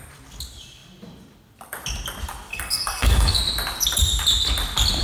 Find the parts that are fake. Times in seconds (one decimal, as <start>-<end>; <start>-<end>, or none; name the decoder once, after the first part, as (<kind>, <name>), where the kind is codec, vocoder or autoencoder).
2.5-3.4 (codec, SNAC)